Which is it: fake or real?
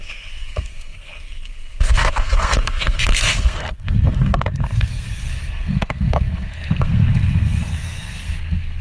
fake